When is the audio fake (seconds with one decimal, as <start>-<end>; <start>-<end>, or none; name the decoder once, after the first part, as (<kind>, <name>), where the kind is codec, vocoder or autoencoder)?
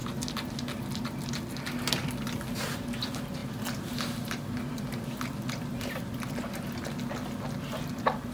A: none